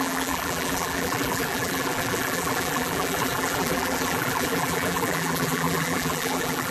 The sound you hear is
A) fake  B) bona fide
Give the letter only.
A